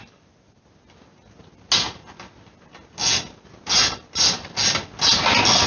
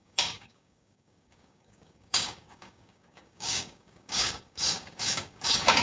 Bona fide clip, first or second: first